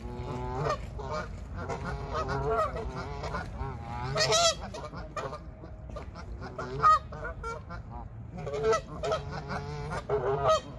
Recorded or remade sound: recorded